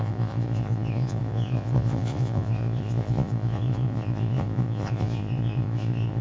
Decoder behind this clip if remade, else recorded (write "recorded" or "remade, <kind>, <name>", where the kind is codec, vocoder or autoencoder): remade, vocoder, Vocos